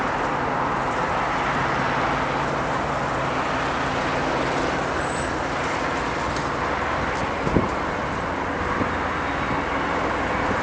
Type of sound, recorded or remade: recorded